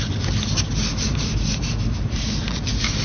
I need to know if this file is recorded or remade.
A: recorded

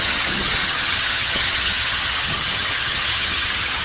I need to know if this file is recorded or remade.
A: remade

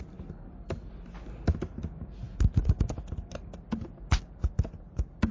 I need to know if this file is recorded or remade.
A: recorded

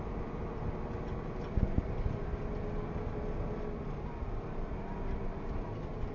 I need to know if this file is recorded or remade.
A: recorded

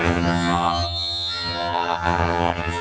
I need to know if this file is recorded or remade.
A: remade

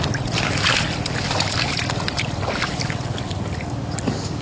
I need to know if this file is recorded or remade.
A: recorded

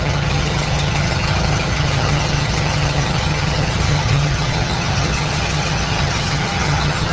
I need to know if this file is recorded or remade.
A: remade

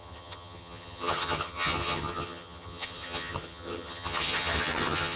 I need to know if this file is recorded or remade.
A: remade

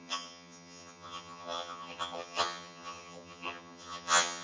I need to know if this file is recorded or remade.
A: remade